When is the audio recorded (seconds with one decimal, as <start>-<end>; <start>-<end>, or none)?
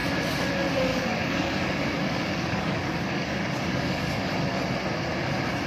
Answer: 0.0-0.9; 4.3-5.7